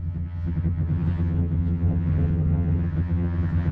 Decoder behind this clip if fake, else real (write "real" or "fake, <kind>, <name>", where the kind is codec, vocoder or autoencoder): fake, vocoder, HiFi-GAN